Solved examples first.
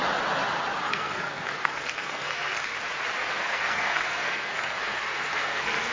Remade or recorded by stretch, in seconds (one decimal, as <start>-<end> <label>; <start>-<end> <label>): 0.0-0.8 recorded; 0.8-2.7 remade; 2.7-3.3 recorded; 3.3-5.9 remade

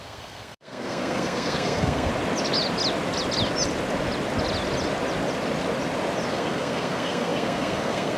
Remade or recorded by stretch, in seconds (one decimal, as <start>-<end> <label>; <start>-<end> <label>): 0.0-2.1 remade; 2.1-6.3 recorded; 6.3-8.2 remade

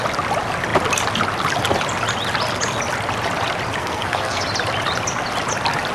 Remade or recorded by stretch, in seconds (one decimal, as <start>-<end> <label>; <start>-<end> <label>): 0.0-3.8 recorded; 3.8-4.4 remade; 4.4-5.9 recorded